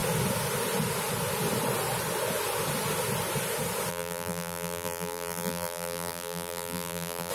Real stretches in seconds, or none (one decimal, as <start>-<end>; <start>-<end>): 0.0-3.9